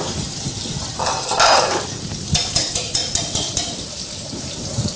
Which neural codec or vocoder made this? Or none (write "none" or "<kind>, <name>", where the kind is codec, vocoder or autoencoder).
none